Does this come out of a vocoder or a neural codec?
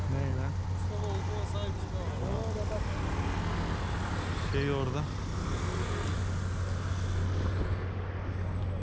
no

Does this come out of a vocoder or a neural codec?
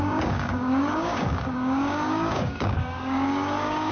yes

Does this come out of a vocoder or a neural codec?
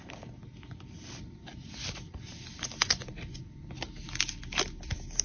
no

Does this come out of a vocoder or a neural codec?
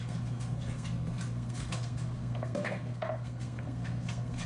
yes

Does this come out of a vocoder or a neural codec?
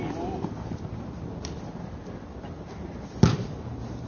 no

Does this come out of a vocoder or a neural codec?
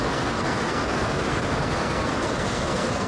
yes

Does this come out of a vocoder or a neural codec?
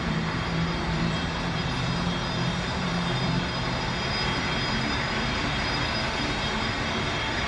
yes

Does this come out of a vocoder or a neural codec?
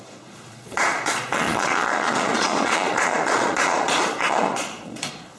yes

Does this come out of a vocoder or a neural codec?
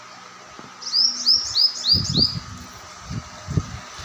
no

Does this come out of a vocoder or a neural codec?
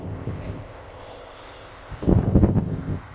yes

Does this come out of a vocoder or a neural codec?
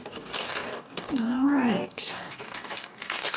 yes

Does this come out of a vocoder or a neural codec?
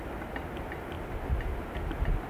no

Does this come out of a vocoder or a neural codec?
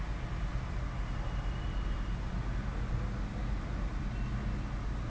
no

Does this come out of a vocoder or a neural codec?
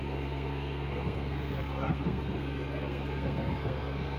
yes